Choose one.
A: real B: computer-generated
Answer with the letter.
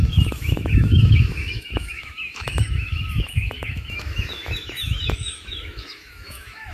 B